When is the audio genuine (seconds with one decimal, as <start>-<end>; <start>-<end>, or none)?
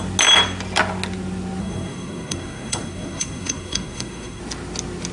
0.0-1.6; 4.4-5.1